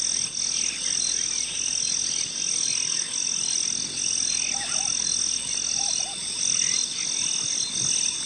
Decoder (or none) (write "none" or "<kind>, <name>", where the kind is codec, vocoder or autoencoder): none